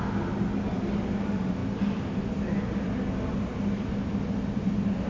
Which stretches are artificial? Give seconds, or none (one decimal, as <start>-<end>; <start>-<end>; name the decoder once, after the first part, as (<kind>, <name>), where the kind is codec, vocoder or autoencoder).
none